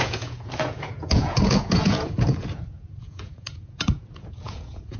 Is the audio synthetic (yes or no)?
yes